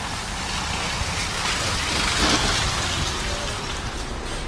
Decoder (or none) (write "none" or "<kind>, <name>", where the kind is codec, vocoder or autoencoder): none